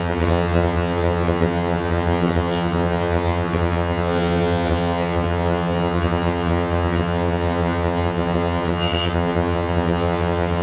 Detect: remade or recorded remade